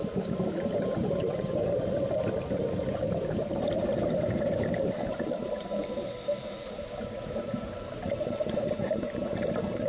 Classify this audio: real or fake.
fake